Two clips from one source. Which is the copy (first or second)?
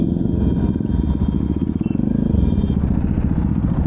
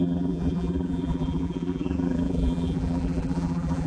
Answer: second